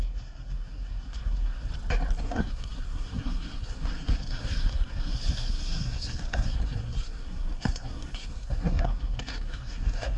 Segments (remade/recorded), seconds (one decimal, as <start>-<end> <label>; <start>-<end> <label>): 0.0-1.7 remade; 1.7-2.2 recorded; 2.2-10.2 remade

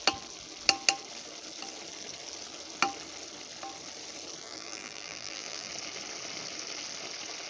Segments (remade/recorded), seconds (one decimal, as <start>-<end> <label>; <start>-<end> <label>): 0.0-4.4 recorded; 4.4-5.7 remade; 5.7-7.5 recorded

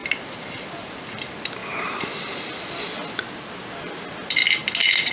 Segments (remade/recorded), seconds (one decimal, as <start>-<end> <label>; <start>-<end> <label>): 0.0-1.6 recorded; 1.6-2.7 remade; 2.7-5.1 recorded

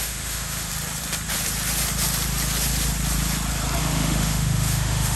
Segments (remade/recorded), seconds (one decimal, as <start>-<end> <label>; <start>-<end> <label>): 0.0-0.7 remade; 0.7-3.8 recorded; 3.8-5.2 remade

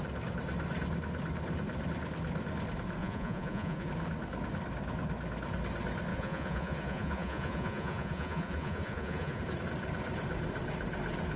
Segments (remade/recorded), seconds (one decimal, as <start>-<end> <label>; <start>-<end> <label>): 0.0-3.0 recorded; 3.0-3.9 remade; 3.9-6.1 recorded; 6.1-9.4 remade; 9.4-11.4 recorded